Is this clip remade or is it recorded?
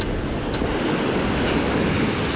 recorded